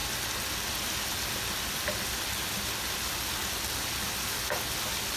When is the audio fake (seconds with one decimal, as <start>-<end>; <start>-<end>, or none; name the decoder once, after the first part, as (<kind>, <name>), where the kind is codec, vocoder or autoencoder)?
none